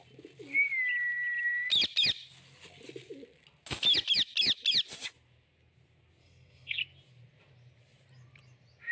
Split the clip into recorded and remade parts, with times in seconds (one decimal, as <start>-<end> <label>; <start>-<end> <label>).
0.0-6.2 recorded; 6.2-6.8 remade; 6.8-8.9 recorded